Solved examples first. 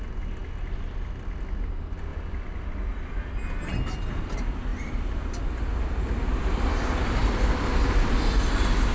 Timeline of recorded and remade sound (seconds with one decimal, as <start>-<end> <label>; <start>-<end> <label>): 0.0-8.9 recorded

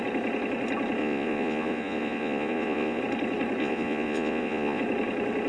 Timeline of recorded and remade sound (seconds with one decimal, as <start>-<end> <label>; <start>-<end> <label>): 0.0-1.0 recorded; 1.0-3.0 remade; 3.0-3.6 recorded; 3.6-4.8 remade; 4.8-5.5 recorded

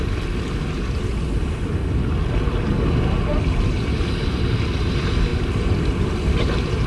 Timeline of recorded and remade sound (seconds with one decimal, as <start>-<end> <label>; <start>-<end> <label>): 0.0-6.9 recorded

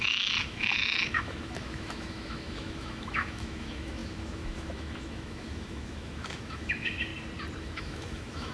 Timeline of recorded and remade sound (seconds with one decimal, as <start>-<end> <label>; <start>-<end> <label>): 0.0-7.1 remade; 7.1-7.6 recorded; 7.6-8.5 remade